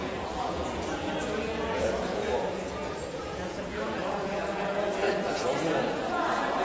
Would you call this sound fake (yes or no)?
yes